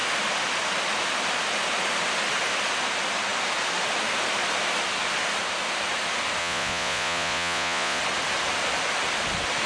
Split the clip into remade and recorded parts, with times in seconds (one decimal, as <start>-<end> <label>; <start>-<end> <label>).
0.0-6.4 recorded; 6.4-8.0 remade; 8.0-9.7 recorded